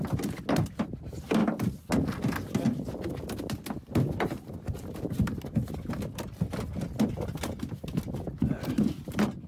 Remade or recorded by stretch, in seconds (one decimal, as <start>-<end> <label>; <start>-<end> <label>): 0.0-9.5 recorded